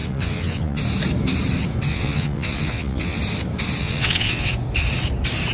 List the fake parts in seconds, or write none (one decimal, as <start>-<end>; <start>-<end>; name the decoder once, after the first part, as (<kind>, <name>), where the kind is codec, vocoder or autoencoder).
0.0-0.8 (vocoder, WaveNeXt); 1.9-3.2; 3.8-4.5